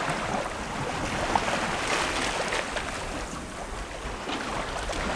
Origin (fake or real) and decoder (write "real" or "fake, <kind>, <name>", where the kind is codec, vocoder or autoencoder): real